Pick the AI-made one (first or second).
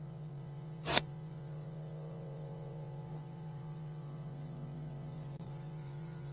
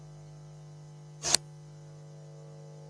first